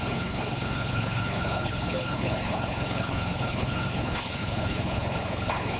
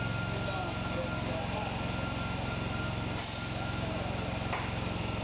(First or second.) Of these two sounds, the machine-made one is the first